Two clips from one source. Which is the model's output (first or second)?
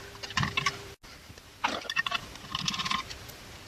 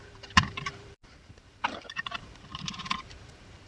second